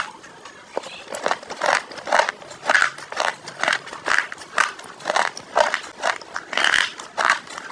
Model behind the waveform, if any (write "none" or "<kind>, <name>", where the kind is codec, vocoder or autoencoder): none